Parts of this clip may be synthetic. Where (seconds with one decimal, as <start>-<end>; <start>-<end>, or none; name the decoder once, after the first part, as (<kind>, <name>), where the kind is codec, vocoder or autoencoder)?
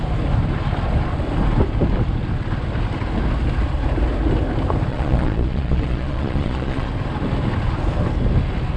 4.9-6.9 (vocoder, Vocos)